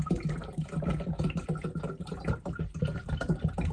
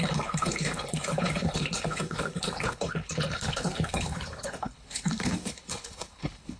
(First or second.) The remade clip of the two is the second